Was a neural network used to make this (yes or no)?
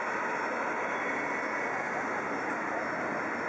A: no